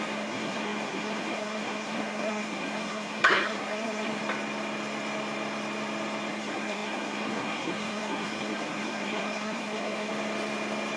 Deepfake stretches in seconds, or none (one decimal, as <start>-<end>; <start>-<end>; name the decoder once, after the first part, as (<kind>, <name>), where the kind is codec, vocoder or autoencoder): 0.0-4.2 (codec, SNAC); 6.3-10.1